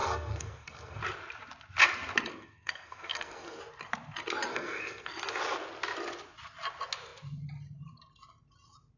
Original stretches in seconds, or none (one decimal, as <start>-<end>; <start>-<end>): 1.0-2.3; 3.6-4.5; 5.1-9.0